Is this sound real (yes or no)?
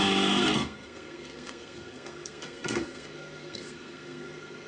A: no